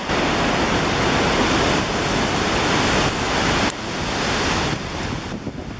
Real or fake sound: real